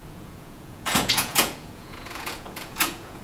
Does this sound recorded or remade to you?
remade